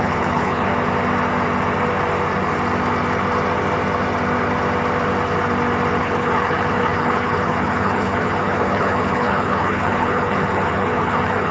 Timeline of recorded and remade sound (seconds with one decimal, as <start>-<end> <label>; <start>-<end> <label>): 0.0-0.7 remade; 0.7-6.0 recorded; 6.0-11.5 remade